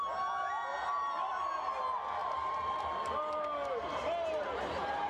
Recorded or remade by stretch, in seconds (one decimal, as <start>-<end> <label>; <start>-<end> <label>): 0.0-0.7 recorded; 0.7-1.4 remade; 1.4-2.2 recorded; 2.2-5.1 remade

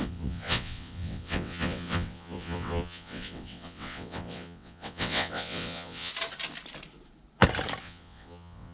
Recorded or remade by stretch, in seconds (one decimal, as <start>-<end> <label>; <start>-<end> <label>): 0.0-6.1 remade; 6.1-7.8 recorded; 7.8-8.7 remade